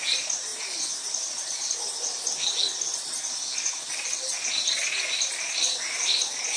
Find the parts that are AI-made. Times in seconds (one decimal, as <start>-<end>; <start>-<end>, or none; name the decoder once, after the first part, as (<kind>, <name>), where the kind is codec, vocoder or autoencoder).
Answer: none